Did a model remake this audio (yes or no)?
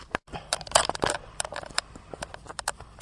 no